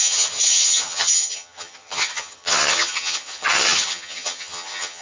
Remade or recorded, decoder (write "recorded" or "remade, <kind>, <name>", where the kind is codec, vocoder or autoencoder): remade, vocoder, HiFi-GAN